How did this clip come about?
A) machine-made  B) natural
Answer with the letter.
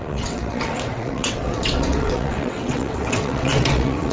A